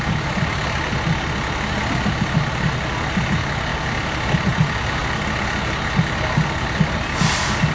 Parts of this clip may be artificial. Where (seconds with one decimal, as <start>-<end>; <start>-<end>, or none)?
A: none